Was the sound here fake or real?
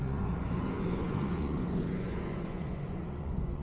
fake